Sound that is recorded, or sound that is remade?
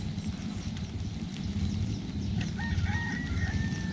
recorded